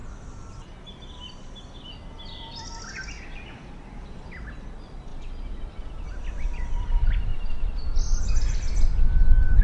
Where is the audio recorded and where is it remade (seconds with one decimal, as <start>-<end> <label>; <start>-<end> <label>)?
0.0-5.1 remade; 5.1-5.8 recorded; 5.8-7.3 remade; 7.3-8.2 recorded; 8.2-9.6 remade